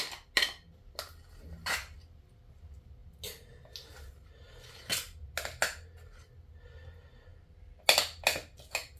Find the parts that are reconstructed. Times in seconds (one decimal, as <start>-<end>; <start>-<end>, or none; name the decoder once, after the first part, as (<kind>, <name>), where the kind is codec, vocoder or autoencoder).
7.3-7.8 (vocoder, BigVGAN v2)